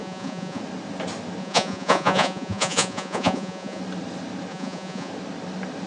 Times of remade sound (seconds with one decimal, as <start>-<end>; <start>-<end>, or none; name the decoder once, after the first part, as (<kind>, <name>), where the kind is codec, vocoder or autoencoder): 0.0-0.6 (vocoder, Vocos); 1.4-3.8; 4.5-5.1